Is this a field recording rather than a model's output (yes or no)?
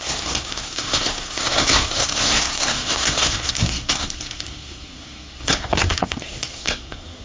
no